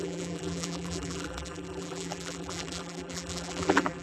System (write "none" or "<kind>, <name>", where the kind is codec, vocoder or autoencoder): vocoder, BigVGAN v2